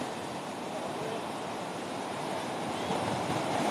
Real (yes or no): no